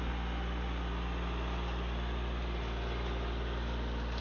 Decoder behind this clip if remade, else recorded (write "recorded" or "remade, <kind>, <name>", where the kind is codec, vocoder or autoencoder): recorded